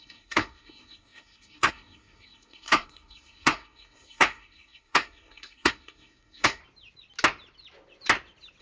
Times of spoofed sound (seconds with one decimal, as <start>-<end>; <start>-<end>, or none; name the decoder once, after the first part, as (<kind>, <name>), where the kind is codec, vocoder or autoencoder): 0.0-6.6 (codec, SNAC)